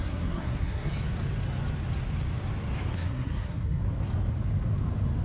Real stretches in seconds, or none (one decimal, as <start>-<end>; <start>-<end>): 0.9-2.9; 3.8-5.2